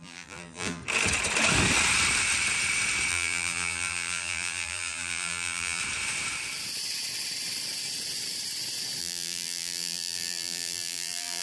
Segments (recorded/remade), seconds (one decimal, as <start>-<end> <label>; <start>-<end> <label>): 0.0-0.8 remade; 0.8-3.1 recorded; 3.1-5.8 remade; 5.8-9.0 recorded; 9.0-11.4 remade